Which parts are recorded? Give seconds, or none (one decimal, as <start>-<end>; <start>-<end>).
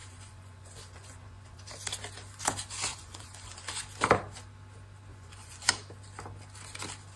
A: 1.6-2.9; 3.7-5.1; 5.7-7.2